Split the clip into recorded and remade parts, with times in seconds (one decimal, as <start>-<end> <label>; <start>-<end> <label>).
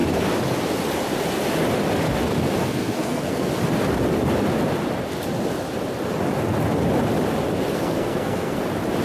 0.0-2.6 recorded; 2.6-3.5 remade; 3.5-7.7 recorded; 7.7-8.6 remade; 8.6-9.0 recorded